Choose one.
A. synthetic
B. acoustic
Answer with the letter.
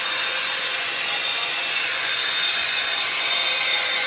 A